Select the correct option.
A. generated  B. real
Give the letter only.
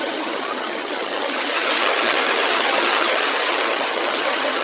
A